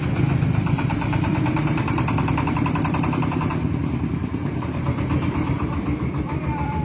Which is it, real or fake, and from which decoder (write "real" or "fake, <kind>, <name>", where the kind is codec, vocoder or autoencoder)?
fake, vocoder, BigVGAN v2